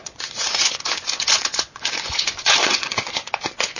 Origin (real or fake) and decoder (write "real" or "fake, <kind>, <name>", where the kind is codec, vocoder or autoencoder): fake, vocoder, Vocos